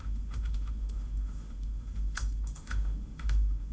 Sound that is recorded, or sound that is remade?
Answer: remade